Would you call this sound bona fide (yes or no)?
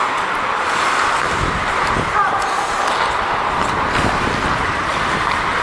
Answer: yes